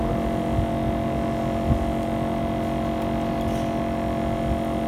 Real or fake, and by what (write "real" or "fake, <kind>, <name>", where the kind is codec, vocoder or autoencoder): real